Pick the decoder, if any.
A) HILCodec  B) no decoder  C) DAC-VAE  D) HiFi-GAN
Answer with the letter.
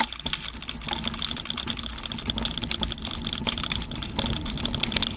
B